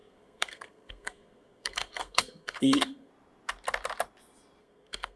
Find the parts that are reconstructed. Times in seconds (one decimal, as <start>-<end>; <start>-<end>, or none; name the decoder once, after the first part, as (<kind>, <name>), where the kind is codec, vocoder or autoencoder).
0.0-3.1 (codec, SNAC); 4.6-5.2